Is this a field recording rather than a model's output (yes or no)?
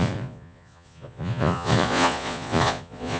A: no